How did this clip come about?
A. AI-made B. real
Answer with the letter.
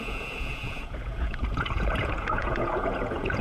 A